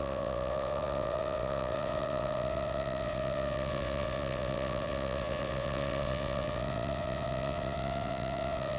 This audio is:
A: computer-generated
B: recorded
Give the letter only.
A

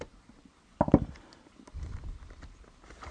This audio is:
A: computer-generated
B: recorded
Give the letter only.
B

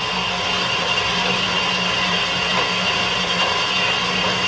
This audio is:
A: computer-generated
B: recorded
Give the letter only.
B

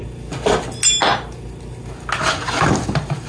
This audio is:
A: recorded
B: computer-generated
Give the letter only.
A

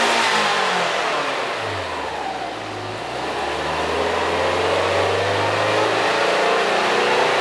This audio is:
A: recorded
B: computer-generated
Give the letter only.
A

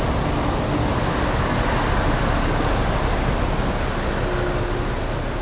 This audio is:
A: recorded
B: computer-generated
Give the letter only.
A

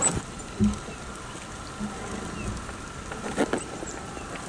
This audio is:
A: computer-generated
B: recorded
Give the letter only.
B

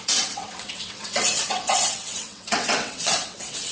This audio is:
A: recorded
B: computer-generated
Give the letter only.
B